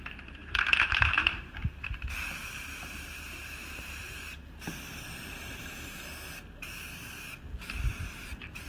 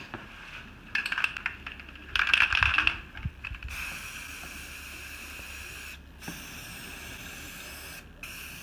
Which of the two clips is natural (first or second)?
second